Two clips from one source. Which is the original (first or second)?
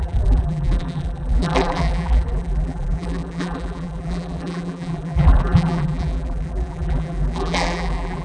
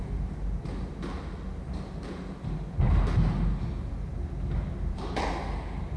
second